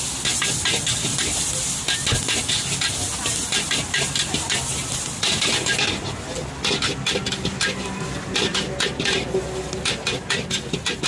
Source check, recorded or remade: recorded